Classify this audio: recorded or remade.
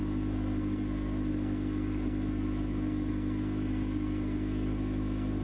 remade